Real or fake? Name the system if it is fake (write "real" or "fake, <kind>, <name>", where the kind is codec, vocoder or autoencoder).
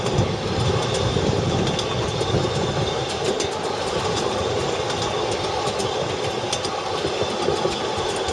real